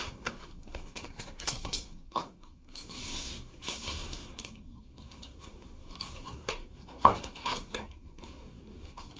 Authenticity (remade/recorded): remade